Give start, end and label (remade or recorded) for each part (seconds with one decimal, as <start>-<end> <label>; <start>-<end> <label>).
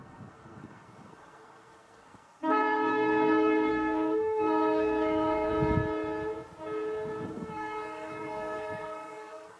0.0-5.5 remade; 5.5-7.3 recorded; 7.3-9.6 remade